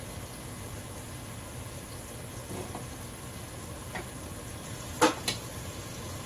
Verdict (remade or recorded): recorded